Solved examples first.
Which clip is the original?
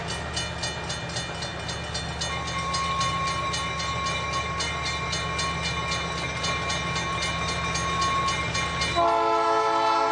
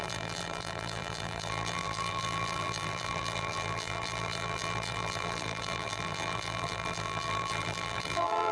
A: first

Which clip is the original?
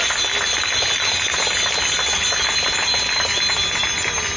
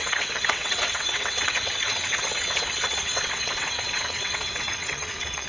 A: first